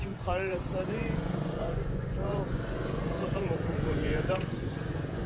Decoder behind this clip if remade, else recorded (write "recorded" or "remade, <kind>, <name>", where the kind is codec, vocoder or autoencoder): remade, vocoder, Vocos